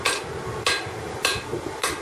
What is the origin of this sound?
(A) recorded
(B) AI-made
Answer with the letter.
A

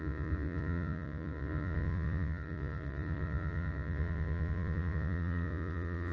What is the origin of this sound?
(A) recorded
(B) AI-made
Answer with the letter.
B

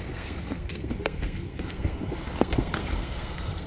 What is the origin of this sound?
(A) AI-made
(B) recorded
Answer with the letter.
A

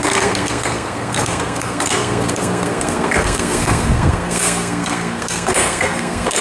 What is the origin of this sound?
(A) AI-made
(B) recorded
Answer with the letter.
A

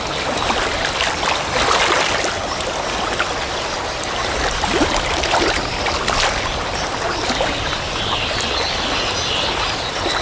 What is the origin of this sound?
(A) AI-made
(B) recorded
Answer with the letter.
B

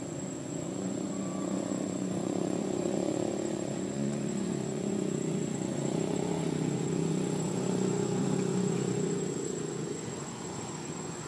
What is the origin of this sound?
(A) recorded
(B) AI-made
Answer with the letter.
B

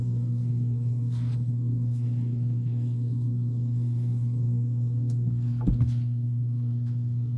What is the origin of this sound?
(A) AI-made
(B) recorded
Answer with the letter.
A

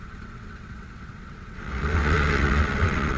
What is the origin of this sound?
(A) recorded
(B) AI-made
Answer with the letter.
B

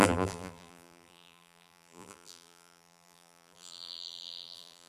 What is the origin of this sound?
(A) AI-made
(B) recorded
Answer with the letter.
A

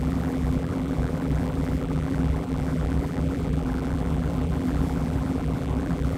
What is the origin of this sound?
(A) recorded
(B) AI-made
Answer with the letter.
B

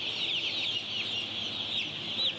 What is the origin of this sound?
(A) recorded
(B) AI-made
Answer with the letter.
A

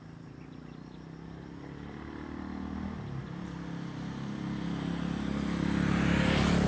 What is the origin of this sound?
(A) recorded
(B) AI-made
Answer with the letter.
A